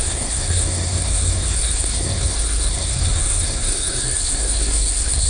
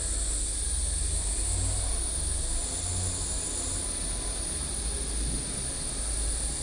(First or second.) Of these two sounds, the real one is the second